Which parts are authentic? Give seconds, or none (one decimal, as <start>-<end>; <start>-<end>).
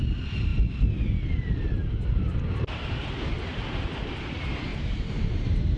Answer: 0.0-4.7